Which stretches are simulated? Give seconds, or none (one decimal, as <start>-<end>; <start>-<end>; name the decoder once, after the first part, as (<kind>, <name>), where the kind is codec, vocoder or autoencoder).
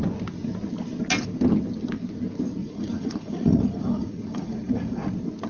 2.6-5.1 (vocoder, Vocos)